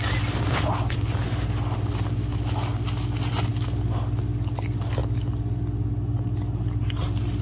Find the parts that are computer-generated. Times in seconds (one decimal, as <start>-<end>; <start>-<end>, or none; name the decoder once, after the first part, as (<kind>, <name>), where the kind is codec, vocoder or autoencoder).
none